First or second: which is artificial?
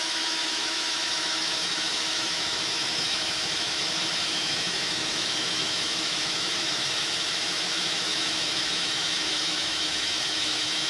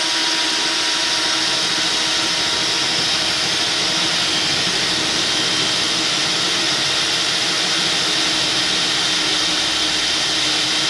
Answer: first